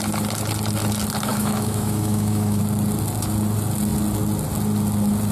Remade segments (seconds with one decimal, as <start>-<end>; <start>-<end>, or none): 1.3-2.6